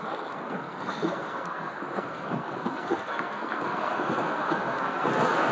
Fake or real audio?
fake